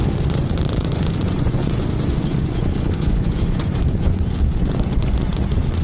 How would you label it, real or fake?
fake